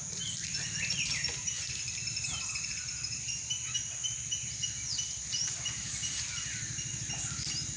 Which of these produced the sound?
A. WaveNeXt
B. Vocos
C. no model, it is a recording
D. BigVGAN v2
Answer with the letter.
C